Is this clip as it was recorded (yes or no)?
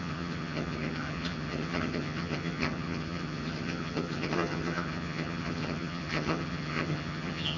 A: no